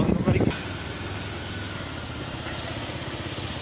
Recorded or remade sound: recorded